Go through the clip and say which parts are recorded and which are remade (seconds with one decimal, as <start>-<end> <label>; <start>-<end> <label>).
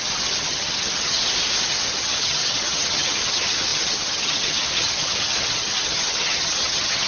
0.0-1.2 remade; 1.2-1.7 recorded; 1.7-7.1 remade